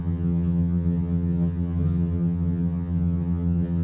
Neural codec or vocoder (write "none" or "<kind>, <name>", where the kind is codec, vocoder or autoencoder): vocoder, HiFi-GAN